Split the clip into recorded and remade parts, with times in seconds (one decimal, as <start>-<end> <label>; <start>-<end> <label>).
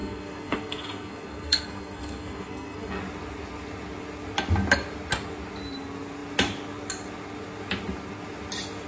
0.0-3.0 remade; 3.0-8.9 recorded